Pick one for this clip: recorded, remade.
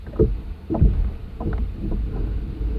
recorded